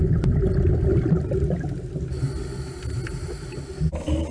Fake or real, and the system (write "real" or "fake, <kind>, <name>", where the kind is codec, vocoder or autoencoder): real